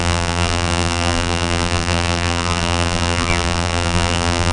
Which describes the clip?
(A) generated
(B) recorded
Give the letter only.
A